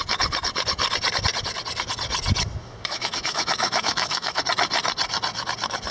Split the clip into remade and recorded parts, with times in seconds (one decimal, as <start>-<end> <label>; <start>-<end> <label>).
0.0-2.6 recorded; 2.6-4.4 remade; 4.4-5.9 recorded